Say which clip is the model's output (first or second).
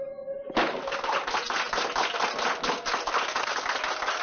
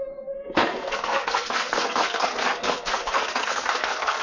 second